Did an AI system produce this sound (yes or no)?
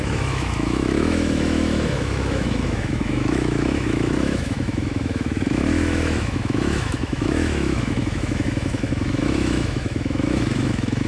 yes